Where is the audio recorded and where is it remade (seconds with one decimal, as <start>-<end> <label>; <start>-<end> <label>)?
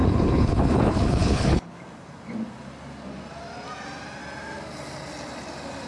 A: 0.0-1.8 remade; 1.8-5.9 recorded